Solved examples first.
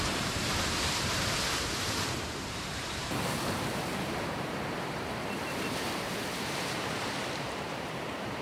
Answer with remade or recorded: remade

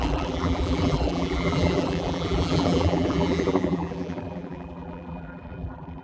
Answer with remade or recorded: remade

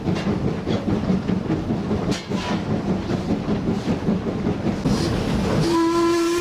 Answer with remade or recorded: recorded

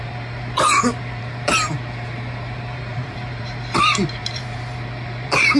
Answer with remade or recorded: remade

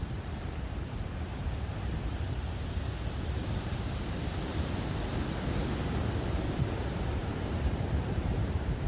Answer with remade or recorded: remade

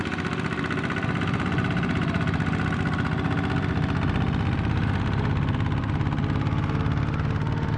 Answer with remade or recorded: recorded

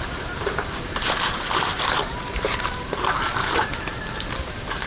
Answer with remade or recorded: remade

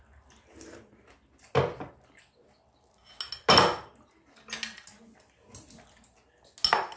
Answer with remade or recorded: recorded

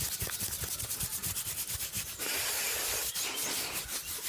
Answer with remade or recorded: recorded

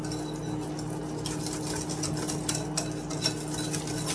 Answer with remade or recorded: recorded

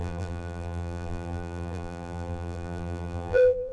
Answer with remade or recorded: remade